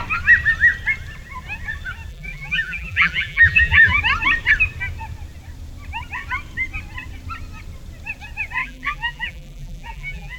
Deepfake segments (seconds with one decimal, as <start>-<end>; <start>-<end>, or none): 2.1-4.0; 8.6-10.4